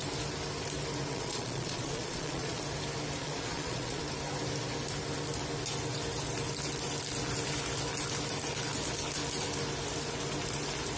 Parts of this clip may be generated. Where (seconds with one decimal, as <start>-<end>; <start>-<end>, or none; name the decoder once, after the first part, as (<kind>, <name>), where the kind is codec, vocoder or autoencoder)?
1.1-2.6 (vocoder, Vocos); 3.2-4.0